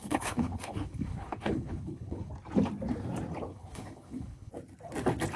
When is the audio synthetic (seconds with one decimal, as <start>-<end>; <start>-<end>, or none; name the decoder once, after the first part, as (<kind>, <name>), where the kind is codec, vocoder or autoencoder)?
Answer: 0.0-2.3 (codec, HILCodec); 3.5-4.5